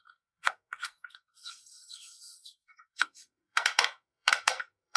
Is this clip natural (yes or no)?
no